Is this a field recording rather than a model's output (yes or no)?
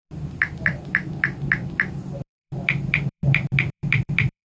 no